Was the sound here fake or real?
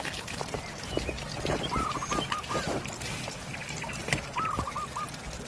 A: real